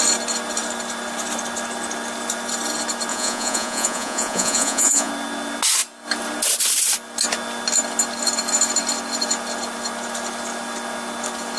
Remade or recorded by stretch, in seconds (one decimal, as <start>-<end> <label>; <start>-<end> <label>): 0.0-3.1 recorded; 3.1-5.1 remade; 5.1-11.6 recorded